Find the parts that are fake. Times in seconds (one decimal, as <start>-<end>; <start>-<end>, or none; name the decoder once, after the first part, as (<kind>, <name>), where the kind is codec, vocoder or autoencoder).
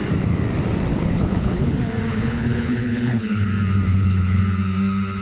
0.9-1.7 (codec, HILCodec); 2.1-3.5; 3.9-4.4